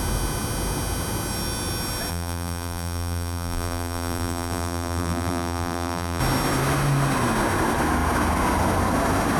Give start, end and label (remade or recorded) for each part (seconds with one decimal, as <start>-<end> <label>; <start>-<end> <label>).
0.0-2.1 recorded; 2.1-6.2 remade; 6.2-9.4 recorded